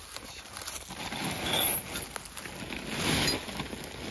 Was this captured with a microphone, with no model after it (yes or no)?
yes